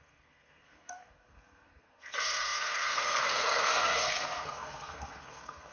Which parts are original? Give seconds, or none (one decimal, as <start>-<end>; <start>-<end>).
none